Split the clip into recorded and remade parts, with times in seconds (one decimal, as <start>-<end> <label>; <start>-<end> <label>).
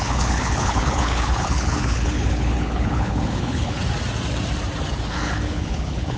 0.0-3.8 remade; 3.8-5.1 recorded; 5.1-6.2 remade